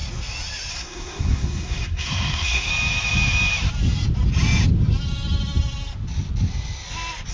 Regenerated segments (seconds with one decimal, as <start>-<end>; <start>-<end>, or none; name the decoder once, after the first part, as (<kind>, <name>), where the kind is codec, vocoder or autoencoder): 0.7-2.7 (codec, SNAC)